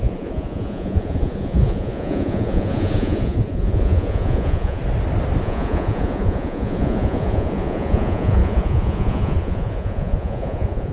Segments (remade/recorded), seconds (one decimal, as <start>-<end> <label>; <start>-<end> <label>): 0.0-4.8 remade; 4.8-5.4 recorded; 5.4-10.9 remade

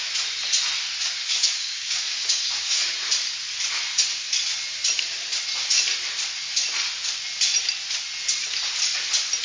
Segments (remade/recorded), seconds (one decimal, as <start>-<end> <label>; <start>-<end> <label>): 0.0-1.2 recorded; 1.2-2.8 remade; 2.8-9.4 recorded

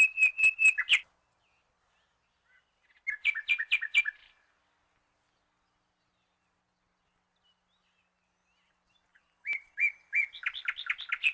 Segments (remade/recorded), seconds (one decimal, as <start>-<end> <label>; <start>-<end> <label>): 0.0-9.1 recorded; 9.1-9.7 remade; 9.7-11.3 recorded

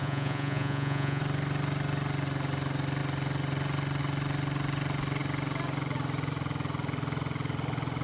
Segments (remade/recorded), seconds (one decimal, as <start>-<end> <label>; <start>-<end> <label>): 0.0-1.2 remade; 1.2-8.0 recorded